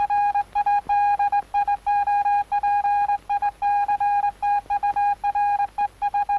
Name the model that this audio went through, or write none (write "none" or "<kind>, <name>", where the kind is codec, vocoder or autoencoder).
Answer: none